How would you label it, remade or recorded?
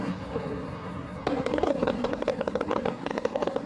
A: remade